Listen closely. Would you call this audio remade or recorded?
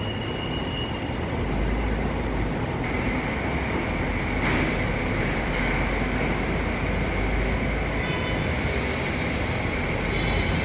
recorded